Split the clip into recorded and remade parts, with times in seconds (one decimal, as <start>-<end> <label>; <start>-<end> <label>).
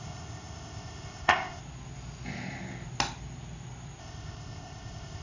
0.0-1.6 remade; 1.6-4.0 recorded; 4.0-5.2 remade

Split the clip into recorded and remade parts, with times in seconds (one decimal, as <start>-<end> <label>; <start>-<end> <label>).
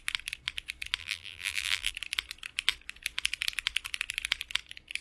0.0-1.0 recorded; 1.0-1.9 remade; 1.9-5.0 recorded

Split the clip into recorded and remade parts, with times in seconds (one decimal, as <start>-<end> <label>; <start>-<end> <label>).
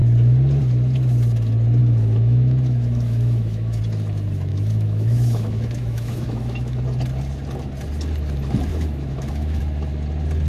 0.0-1.8 recorded; 1.8-3.8 remade; 3.8-4.5 recorded; 4.5-6.8 remade; 6.8-8.7 recorded; 8.7-9.6 remade; 9.6-10.5 recorded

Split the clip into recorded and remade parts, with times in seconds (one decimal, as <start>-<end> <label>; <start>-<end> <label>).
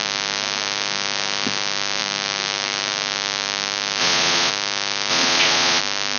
0.0-4.0 recorded; 4.0-4.5 remade; 4.5-5.1 recorded; 5.1-5.8 remade; 5.8-6.2 recorded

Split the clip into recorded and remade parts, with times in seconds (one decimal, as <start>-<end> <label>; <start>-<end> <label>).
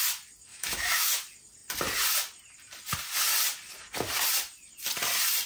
0.0-0.5 recorded; 0.5-1.1 remade; 1.1-5.5 recorded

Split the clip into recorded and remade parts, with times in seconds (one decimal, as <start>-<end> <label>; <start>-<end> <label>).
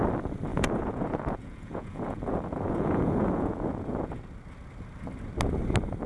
0.0-0.5 recorded; 0.5-4.2 remade; 4.2-6.1 recorded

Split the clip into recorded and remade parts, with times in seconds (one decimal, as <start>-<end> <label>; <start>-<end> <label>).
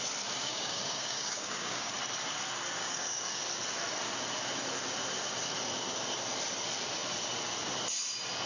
0.0-0.4 recorded; 0.4-1.9 remade; 1.9-2.8 recorded; 2.8-3.4 remade; 3.4-8.5 recorded